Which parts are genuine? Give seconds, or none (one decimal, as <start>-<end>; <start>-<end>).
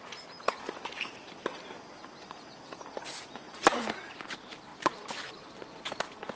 none